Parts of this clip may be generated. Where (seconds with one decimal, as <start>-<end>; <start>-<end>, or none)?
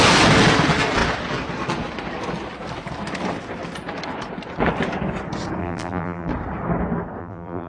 5.6-6.3; 7.2-7.7